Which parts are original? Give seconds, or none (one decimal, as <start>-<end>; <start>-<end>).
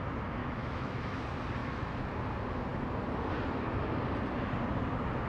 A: 0.0-0.4; 1.2-1.6; 2.1-5.3